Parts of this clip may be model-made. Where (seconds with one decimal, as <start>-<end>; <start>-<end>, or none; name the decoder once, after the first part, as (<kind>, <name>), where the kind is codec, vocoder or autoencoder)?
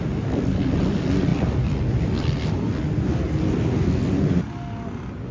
none